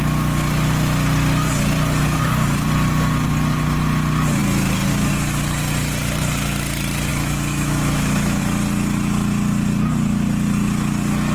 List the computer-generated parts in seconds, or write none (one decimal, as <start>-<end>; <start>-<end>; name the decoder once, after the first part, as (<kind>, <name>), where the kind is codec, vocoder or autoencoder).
7.1-8.4 (autoencoder, DAC-VAE)